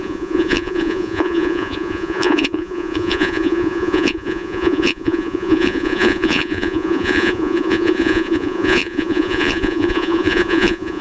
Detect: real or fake fake